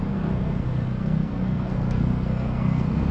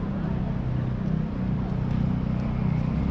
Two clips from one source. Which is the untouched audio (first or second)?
second